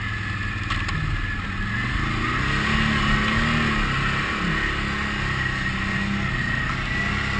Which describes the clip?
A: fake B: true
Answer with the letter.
B